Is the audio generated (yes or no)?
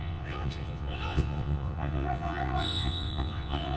yes